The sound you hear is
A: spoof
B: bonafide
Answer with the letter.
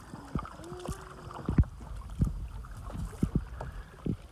B